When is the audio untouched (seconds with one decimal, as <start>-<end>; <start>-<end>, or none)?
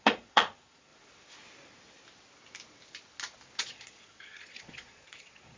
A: 0.9-3.6